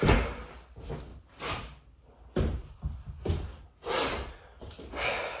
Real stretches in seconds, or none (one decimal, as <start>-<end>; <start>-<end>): 0.0-5.4